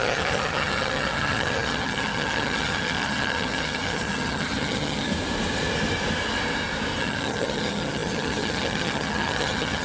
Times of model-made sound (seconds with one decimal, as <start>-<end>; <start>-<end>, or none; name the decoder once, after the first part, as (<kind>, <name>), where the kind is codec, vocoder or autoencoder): 0.0-5.1 (vocoder, HiFi-GAN); 7.0-9.8